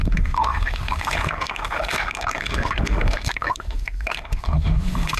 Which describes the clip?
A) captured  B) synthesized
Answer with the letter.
B